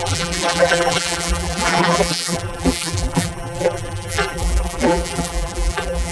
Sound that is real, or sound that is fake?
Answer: fake